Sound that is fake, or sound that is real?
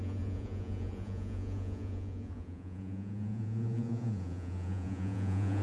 fake